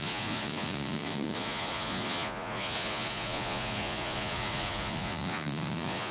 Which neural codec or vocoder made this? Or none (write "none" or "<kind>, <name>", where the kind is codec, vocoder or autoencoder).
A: vocoder, Vocos